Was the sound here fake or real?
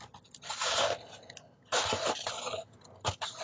real